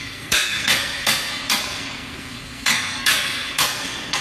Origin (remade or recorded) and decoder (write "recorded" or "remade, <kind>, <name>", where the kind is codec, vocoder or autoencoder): remade, codec, SNAC